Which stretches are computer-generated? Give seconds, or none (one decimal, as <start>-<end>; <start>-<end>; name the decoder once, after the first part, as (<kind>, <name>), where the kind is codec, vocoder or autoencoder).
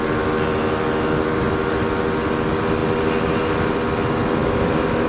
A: none